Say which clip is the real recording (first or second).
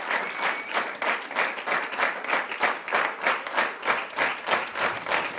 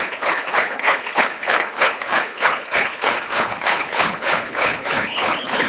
first